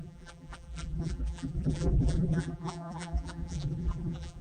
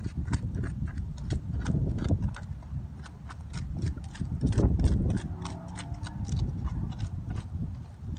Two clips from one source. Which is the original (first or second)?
second